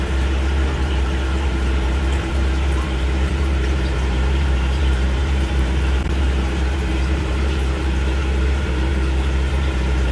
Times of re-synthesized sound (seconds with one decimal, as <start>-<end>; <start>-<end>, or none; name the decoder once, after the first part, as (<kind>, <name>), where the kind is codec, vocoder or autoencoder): 0.0-8.9 (vocoder, BigVGAN v2); 9.5-10.1